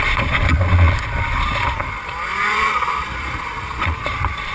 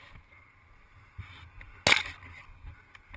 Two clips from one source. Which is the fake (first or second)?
first